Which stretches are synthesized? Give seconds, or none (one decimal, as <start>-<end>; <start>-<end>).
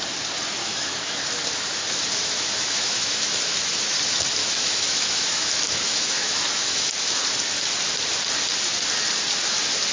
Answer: 0.6-1.2; 2.2-3.4; 4.4-6.9